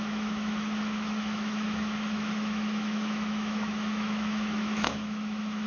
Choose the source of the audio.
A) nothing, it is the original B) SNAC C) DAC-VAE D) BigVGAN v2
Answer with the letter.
C